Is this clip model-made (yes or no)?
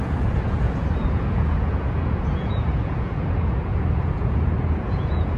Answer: yes